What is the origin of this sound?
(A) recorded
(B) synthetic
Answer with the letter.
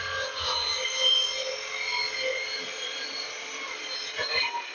A